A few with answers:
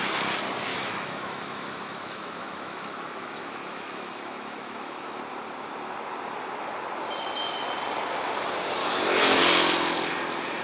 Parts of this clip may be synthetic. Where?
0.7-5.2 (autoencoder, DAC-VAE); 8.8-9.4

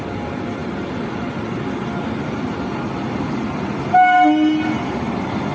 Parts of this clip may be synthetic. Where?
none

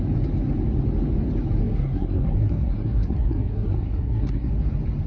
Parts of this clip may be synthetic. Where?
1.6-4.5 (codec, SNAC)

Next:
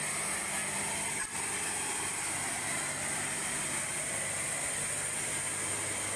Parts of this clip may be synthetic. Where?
none

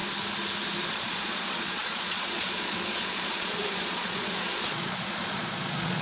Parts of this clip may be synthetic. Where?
0.9-6.0 (vocoder, Vocos)